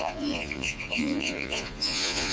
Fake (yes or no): yes